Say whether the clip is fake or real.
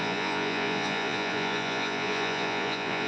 fake